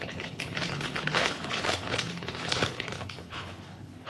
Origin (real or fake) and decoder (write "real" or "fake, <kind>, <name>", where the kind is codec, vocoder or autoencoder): fake, codec, HILCodec